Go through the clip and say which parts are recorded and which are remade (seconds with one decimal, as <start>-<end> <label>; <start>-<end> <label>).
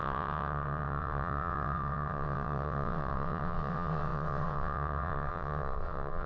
0.0-6.3 remade